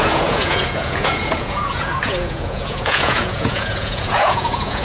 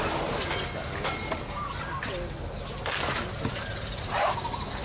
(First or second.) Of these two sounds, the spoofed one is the first